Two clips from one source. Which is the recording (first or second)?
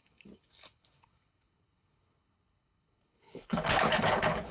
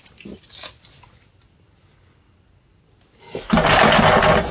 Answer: second